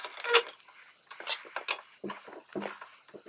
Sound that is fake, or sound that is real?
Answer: real